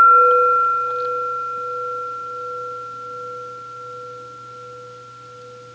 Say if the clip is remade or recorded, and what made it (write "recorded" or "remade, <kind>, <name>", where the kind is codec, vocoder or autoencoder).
recorded